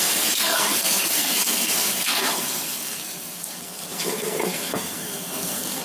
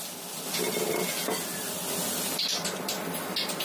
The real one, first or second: second